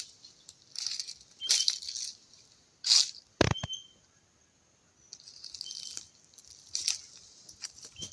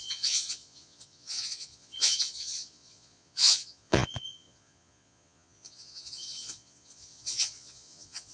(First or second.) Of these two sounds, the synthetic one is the second